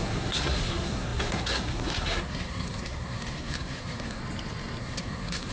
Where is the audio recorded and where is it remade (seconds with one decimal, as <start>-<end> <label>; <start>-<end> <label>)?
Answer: 0.0-4.2 remade; 4.2-4.8 recorded; 4.8-5.5 remade